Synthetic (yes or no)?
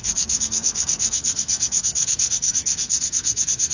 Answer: yes